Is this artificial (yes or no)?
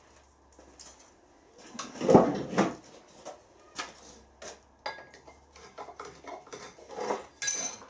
no